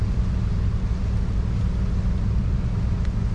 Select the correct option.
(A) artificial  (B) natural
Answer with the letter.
B